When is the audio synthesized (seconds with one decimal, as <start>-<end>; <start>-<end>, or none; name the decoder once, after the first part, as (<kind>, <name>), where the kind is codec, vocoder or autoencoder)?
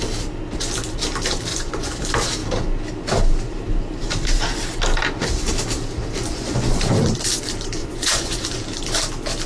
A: 1.5-2.0 (vocoder, Vocos); 6.2-6.8; 7.8-8.6